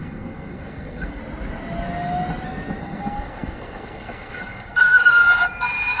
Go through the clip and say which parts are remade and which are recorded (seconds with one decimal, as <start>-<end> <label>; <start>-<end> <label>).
0.0-1.2 remade; 1.2-2.8 recorded; 2.8-5.2 remade; 5.2-6.0 recorded